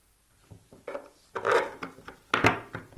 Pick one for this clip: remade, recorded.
recorded